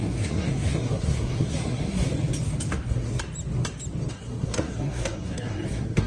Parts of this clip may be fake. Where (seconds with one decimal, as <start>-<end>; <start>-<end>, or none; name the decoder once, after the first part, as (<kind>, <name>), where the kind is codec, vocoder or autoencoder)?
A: 0.0-2.1 (codec, SNAC); 2.7-3.1; 4.1-6.1